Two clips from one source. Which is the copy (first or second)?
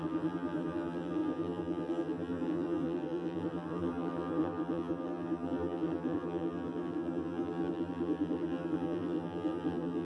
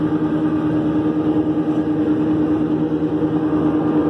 first